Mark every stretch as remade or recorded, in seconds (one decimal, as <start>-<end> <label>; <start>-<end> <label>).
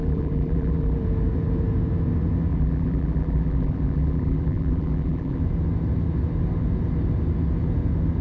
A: 0.0-1.0 remade; 1.0-2.5 recorded; 2.5-5.4 remade; 5.4-8.2 recorded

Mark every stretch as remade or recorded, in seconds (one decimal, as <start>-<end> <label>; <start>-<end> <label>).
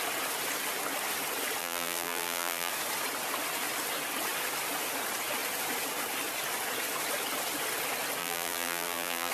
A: 0.0-1.6 recorded; 1.6-2.7 remade; 2.7-8.2 recorded; 8.2-9.3 remade